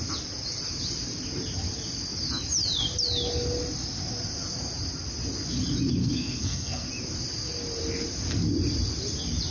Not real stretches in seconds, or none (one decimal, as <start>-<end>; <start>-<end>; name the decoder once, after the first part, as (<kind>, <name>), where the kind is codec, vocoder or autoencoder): 6.0-6.9 (codec, SNAC)